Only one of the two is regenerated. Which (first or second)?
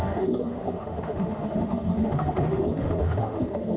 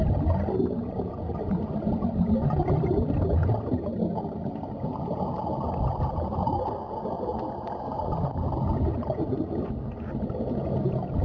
first